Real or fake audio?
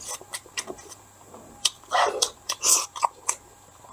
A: fake